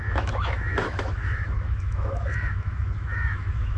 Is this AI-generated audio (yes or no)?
yes